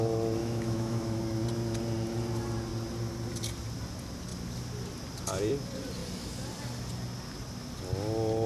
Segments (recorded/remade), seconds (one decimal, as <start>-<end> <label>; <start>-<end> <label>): 0.0-0.4 recorded; 0.4-1.2 remade; 1.2-8.5 recorded

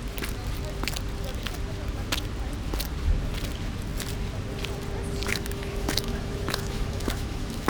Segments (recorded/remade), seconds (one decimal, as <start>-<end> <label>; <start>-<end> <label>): 0.0-5.3 recorded; 5.3-7.7 remade

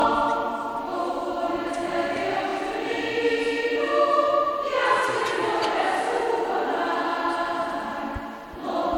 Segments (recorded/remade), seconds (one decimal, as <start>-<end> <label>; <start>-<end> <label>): 0.0-9.0 recorded

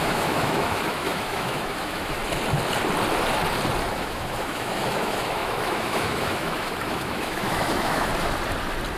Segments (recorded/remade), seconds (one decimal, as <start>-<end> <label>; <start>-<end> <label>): 0.0-2.2 remade; 2.2-3.9 recorded; 3.9-8.1 remade; 8.1-9.0 recorded

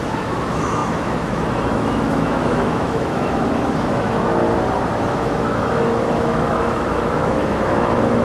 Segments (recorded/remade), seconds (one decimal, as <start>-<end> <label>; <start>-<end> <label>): 0.0-4.4 remade; 4.4-5.1 recorded; 5.1-8.2 remade